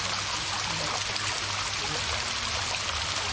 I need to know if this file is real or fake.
real